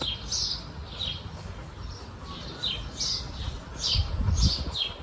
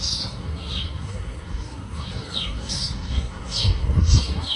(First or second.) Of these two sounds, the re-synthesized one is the second